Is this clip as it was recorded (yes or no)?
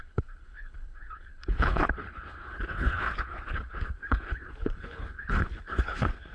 no